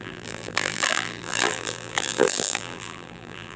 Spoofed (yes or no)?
yes